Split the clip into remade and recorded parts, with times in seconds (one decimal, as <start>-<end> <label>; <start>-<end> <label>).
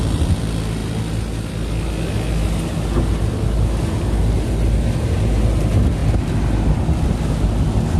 0.0-8.0 recorded